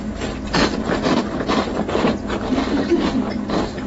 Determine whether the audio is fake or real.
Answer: real